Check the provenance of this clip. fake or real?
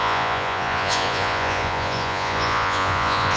fake